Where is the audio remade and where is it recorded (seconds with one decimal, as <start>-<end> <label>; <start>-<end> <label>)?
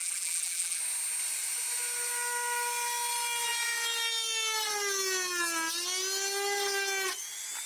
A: 0.0-0.8 remade; 0.8-7.7 recorded